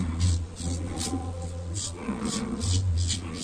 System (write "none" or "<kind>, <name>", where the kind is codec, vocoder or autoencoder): vocoder, Vocos